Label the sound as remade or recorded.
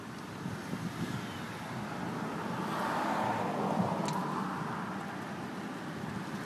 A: recorded